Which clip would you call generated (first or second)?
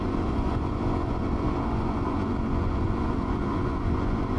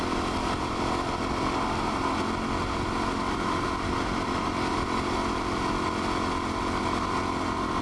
first